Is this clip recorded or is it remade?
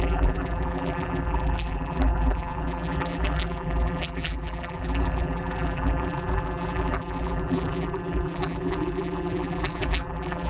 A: remade